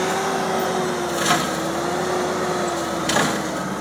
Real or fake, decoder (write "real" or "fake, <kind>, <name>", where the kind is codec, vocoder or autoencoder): real